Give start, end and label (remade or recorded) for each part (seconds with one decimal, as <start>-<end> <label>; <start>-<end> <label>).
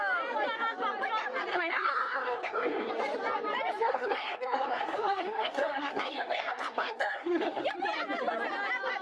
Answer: 0.0-1.5 recorded; 1.5-2.9 remade; 2.9-3.8 recorded; 3.8-7.6 remade; 7.6-9.0 recorded